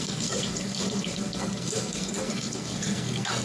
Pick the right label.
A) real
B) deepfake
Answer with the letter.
B